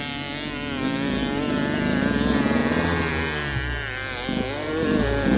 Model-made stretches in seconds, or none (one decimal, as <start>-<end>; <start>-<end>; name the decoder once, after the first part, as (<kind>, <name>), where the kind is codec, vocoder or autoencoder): none